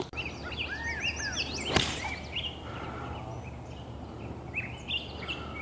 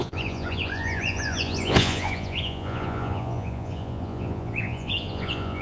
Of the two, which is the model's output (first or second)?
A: second